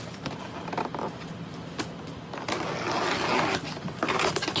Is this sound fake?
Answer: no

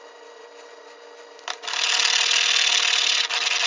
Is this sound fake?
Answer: no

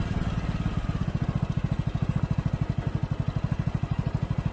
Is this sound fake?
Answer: no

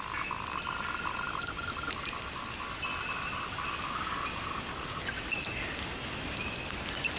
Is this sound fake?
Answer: no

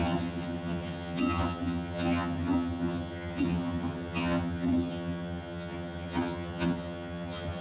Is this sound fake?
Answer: yes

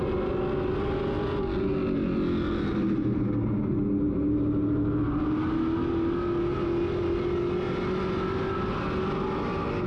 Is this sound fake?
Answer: no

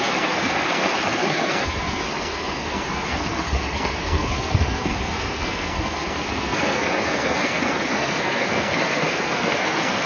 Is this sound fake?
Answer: yes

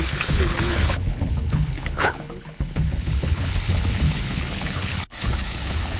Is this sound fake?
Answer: yes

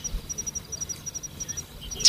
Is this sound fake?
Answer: no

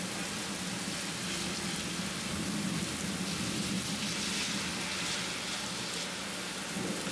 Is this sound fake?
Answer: no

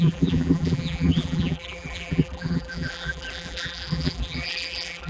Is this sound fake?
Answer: yes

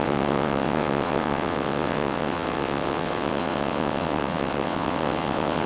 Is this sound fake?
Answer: yes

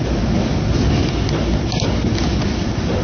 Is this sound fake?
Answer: no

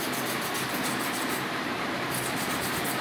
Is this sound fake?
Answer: no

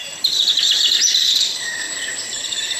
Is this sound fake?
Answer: yes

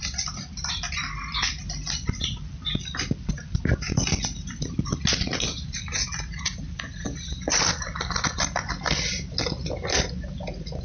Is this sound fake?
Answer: no